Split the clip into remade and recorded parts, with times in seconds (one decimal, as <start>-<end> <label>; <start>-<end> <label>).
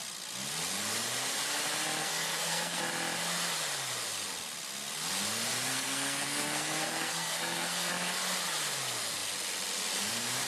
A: 0.0-2.0 recorded; 2.0-2.8 remade; 2.8-5.7 recorded; 5.7-7.9 remade; 7.9-10.5 recorded